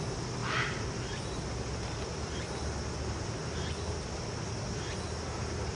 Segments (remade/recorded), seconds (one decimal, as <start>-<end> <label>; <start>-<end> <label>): 0.0-5.8 recorded